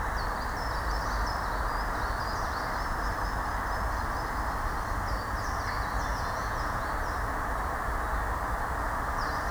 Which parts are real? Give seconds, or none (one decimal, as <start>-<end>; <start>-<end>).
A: 0.0-6.1; 6.9-9.5